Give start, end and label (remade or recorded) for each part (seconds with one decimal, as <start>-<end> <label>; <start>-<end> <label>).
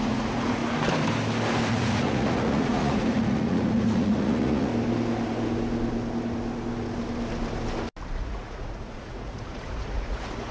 0.0-0.6 remade; 0.6-1.7 recorded; 1.7-4.7 remade; 4.7-8.2 recorded; 8.2-10.5 remade